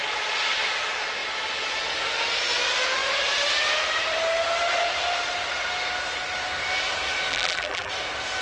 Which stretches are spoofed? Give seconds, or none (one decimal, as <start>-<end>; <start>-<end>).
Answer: 7.3-7.9